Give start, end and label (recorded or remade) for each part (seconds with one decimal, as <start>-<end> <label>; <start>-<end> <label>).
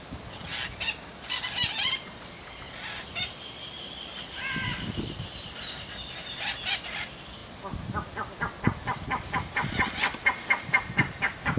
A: 0.0-11.6 recorded